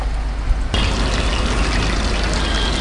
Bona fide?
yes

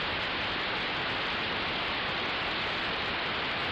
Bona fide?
yes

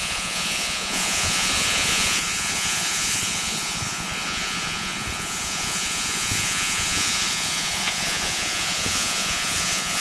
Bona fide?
no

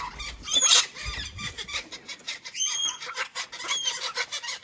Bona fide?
yes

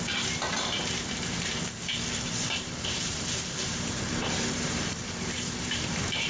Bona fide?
no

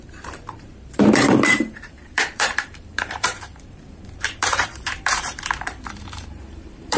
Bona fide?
no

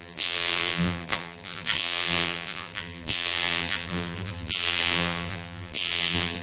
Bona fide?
no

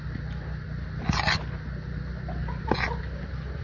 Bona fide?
yes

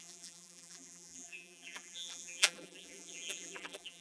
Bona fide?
no